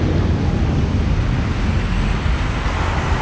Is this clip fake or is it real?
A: real